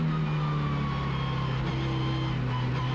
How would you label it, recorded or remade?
recorded